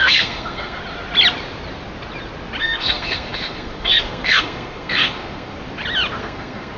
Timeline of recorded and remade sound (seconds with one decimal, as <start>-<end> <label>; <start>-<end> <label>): 0.0-0.8 remade; 0.8-2.6 recorded; 2.6-5.6 remade; 5.6-6.2 recorded; 6.2-6.8 remade